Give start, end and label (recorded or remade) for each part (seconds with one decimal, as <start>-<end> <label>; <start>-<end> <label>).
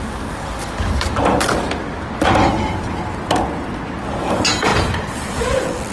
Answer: 0.0-5.9 recorded